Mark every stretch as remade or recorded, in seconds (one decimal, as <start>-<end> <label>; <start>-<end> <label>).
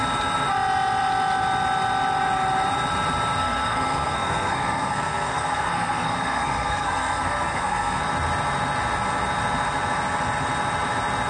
0.0-3.4 recorded; 3.4-8.0 remade; 8.0-11.3 recorded